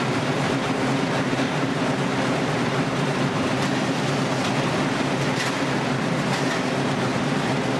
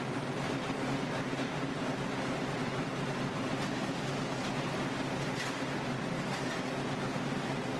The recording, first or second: second